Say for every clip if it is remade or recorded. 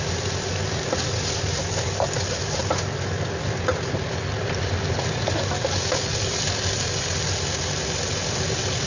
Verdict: recorded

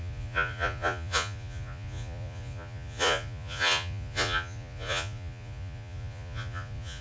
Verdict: remade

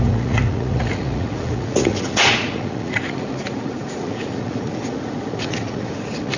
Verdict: remade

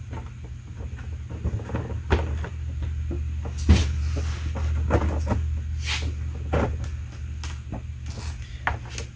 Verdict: recorded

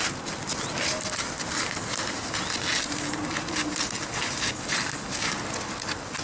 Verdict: recorded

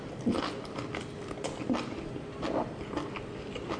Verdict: recorded